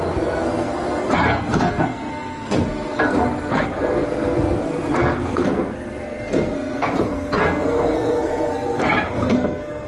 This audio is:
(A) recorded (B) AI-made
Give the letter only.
B